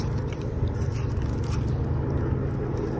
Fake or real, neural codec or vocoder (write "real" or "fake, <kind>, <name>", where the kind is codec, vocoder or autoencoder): fake, vocoder, BigVGAN v2